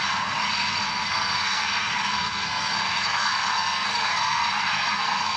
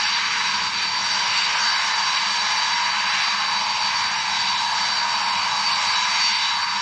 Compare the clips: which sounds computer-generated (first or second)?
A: first